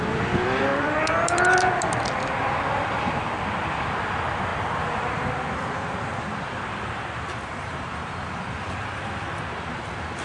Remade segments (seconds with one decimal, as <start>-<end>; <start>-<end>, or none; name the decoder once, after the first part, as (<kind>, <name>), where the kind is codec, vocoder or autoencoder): 0.0-10.2 (vocoder, BigVGAN v2)